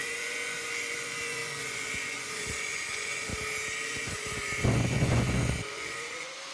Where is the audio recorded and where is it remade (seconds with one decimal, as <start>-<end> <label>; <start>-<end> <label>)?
0.0-3.3 remade; 3.3-3.9 recorded; 3.9-6.5 remade

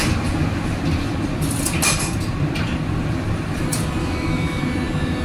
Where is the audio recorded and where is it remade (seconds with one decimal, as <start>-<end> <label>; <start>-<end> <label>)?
0.0-4.0 recorded; 4.0-4.6 remade; 4.6-5.2 recorded

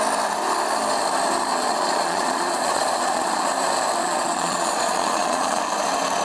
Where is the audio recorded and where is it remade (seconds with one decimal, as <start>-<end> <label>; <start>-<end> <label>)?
0.0-1.5 recorded; 1.5-3.5 remade; 3.5-4.0 recorded; 4.0-5.6 remade; 5.6-6.2 recorded